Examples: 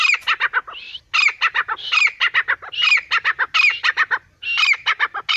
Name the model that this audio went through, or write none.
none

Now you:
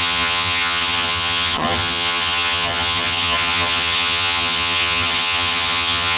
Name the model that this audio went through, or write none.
vocoder, HiFi-GAN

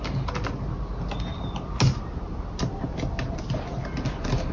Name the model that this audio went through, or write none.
none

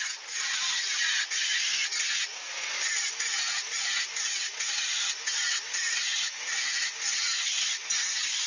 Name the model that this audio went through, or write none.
none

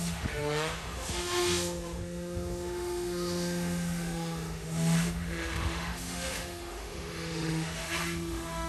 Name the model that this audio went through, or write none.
autoencoder, DAC-VAE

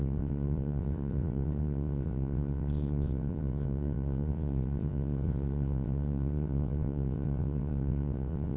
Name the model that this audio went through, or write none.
vocoder, WaveNeXt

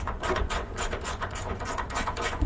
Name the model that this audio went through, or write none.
vocoder, Vocos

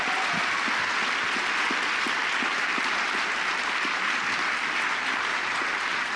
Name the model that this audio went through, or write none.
none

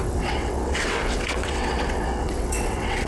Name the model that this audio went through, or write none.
vocoder, WaveNeXt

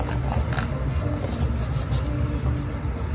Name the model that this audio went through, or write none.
none